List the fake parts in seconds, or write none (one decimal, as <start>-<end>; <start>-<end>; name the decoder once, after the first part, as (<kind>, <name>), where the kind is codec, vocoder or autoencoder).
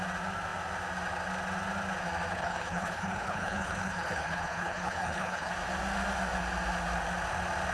2.3-5.5 (codec, HILCodec)